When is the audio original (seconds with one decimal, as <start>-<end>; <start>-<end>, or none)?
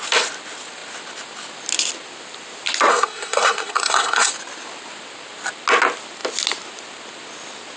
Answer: 0.0-2.9; 4.3-7.8